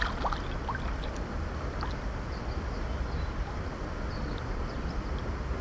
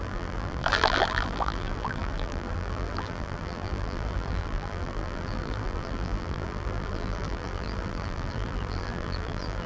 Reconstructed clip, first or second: second